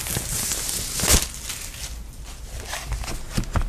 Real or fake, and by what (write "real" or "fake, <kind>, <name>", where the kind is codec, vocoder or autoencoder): real